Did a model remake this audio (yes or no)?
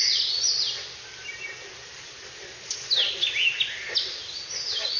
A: no